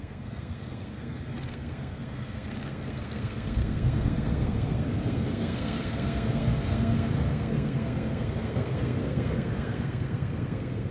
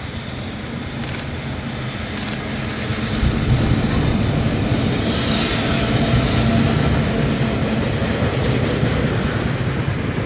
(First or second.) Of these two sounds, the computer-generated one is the first